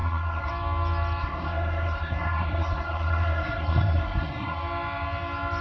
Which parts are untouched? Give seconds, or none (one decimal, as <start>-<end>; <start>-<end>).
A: 0.5-1.2; 4.6-5.6